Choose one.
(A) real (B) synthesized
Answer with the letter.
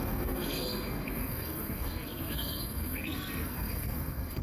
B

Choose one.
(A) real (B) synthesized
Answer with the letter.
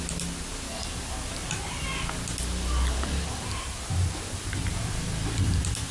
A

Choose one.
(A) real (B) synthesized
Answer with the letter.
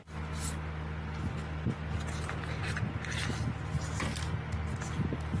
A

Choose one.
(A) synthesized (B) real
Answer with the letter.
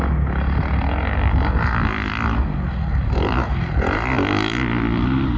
B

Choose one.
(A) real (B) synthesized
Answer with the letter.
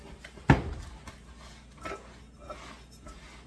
A